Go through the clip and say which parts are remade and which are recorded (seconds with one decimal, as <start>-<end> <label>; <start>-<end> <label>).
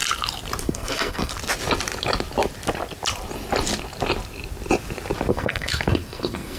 0.0-0.6 recorded; 0.6-1.3 remade; 1.3-5.3 recorded; 5.3-6.6 remade